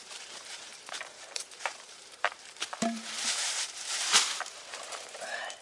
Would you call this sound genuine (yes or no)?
no